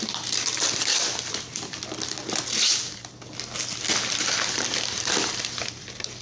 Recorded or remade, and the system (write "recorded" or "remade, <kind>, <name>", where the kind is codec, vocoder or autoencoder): remade, vocoder, BigVGAN v2